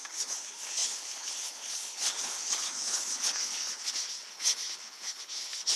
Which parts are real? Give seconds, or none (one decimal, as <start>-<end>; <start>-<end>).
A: none